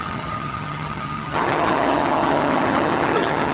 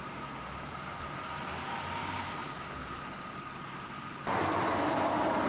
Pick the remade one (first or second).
first